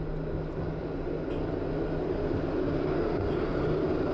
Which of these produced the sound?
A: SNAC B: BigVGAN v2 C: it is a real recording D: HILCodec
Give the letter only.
C